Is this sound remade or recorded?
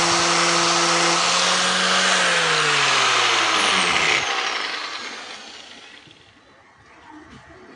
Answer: recorded